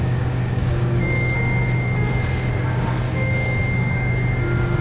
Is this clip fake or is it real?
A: fake